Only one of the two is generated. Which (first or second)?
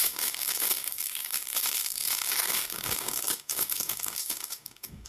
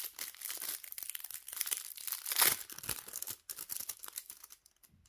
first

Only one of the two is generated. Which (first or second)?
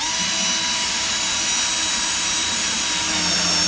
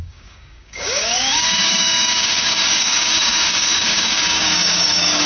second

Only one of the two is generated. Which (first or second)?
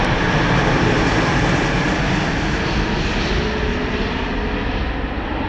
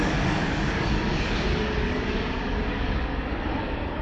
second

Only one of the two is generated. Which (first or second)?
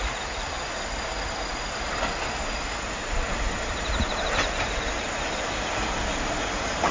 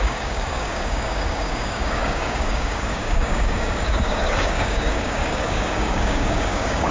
second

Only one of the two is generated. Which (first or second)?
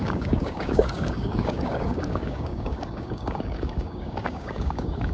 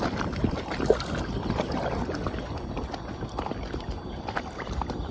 first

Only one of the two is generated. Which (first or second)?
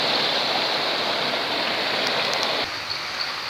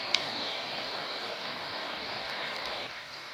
second